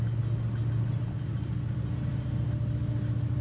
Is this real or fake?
real